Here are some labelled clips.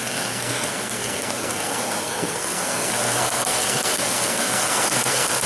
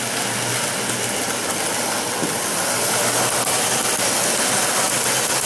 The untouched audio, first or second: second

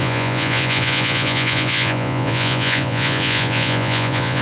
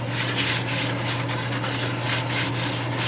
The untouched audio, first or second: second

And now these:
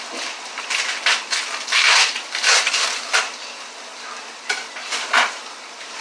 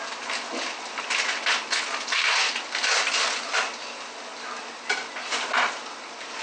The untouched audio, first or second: second